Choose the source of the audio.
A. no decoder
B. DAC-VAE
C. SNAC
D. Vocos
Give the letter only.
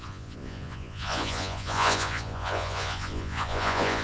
D